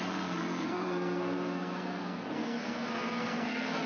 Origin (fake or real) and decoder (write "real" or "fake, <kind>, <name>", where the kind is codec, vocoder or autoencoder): fake, codec, SNAC